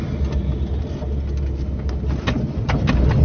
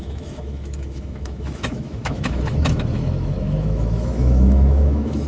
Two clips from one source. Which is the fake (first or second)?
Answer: second